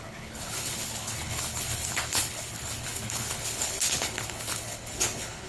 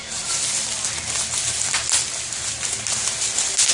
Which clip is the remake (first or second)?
first